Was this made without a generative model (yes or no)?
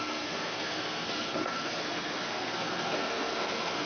no